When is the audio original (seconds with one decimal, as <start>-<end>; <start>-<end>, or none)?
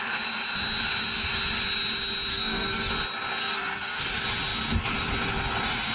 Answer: 0.0-2.3; 2.9-3.4; 4.0-5.9